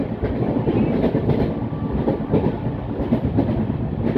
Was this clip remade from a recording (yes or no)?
no